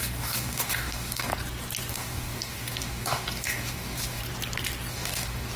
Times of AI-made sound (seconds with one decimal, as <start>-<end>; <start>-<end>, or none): 0.0-1.3; 1.9-4.2; 4.9-5.6